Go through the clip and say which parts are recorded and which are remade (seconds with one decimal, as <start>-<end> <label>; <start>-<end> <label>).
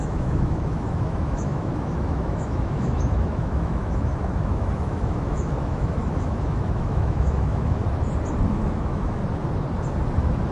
0.0-7.8 remade; 7.8-8.5 recorded; 8.5-9.2 remade; 9.2-10.5 recorded